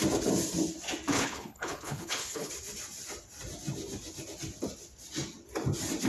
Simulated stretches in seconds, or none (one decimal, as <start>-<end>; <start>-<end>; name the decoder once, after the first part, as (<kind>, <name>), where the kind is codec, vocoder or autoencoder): 1.1-2.5 (codec, HILCodec)